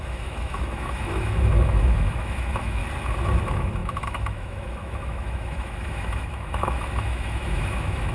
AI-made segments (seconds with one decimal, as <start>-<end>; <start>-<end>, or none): 0.0-2.8; 3.4-8.1

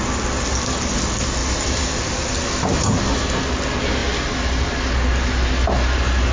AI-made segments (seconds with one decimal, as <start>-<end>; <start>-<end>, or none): none

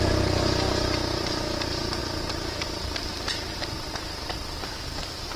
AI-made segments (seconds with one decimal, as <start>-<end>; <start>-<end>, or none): none

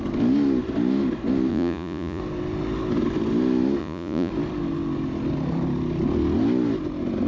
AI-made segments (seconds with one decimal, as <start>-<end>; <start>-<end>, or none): 1.5-2.2; 3.8-4.3